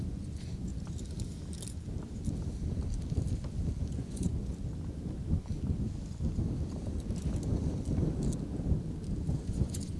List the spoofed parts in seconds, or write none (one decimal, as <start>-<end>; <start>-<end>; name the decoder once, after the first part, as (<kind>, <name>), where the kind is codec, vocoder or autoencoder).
0.0-0.7 (vocoder, Vocos); 3.9-4.5; 9.3-10.0